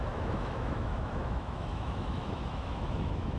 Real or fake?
fake